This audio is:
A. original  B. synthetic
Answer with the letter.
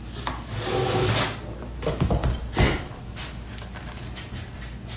A